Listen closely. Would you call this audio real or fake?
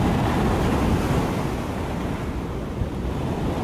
real